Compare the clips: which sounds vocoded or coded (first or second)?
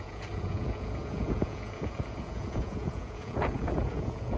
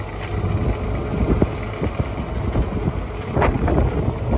first